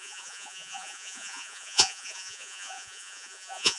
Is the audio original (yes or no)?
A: no